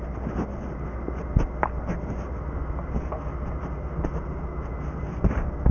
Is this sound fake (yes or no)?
no